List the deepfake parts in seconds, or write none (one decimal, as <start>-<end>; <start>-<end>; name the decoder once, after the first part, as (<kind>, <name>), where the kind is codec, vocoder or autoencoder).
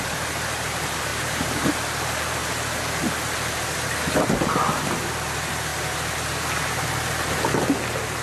1.1-1.7 (vocoder, BigVGAN v2); 2.4-3.0